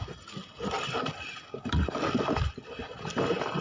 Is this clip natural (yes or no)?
yes